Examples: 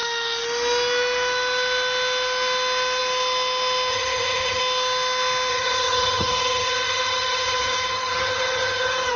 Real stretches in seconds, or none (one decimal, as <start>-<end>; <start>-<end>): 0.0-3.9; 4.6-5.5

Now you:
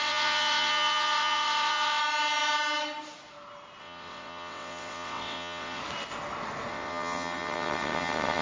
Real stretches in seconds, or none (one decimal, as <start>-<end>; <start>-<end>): 2.0-3.8; 5.8-6.7

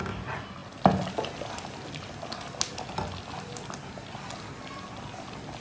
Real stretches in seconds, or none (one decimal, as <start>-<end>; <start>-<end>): 0.0-5.6